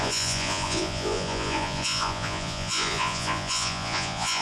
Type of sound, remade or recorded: remade